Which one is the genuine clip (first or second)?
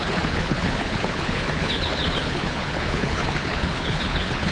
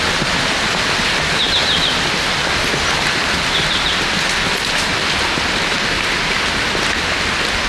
second